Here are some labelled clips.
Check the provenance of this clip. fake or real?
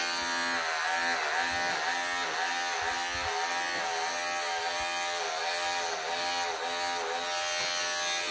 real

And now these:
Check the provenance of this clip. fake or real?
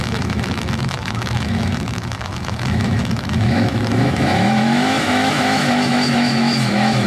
fake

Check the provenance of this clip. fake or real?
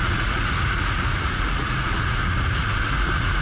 fake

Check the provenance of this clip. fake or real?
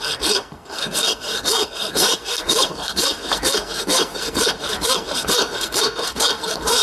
fake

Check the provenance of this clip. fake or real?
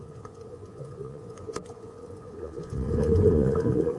fake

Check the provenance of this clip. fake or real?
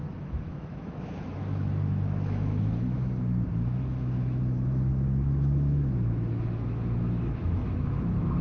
fake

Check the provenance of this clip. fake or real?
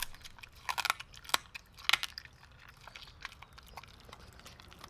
real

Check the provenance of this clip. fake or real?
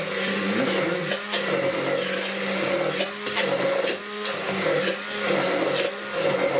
real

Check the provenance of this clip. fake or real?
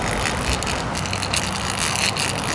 real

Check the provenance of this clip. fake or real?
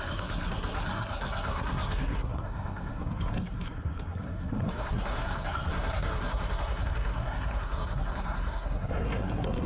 fake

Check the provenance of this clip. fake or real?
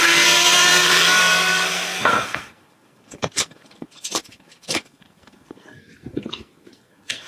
fake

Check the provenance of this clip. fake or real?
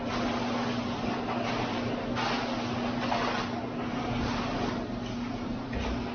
real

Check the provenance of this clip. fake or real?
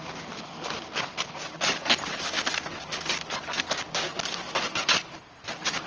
real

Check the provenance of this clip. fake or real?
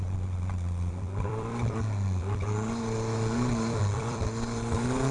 fake